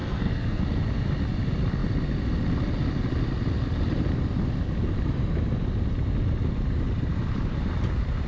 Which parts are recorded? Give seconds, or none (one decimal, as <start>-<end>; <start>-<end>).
0.6-8.3